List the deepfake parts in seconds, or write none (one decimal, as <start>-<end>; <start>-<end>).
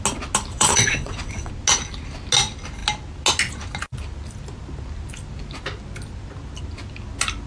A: 0.5-1.5